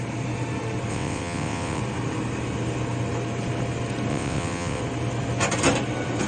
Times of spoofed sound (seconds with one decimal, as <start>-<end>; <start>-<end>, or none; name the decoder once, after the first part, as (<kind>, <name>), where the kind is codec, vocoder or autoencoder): 0.9-1.8 (vocoder, WaveNeXt); 4.1-4.8